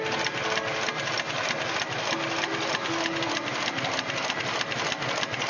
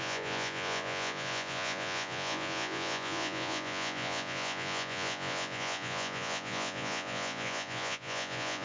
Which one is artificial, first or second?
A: second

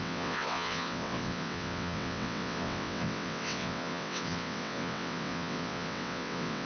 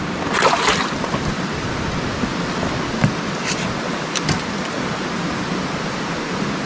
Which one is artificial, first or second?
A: first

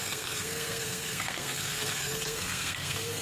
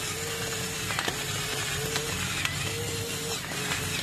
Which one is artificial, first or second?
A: first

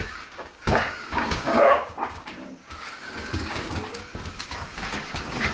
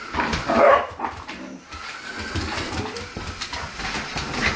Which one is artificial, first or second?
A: first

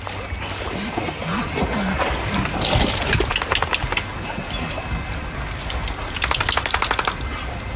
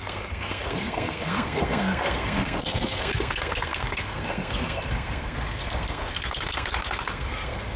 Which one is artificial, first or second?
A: second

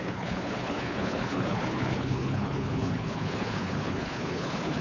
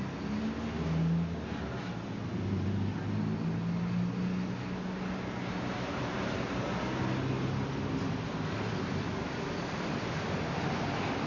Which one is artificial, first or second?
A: first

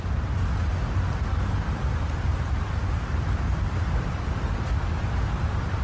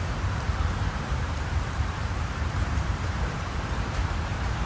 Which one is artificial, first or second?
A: second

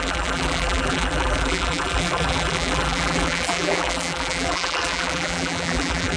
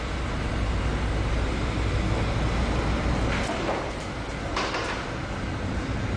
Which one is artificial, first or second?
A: first